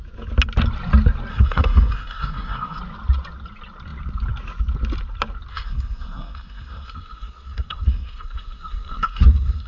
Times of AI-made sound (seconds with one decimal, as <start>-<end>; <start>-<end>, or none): 1.3-2.8; 5.5-9.7